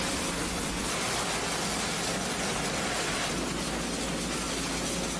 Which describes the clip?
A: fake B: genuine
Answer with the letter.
B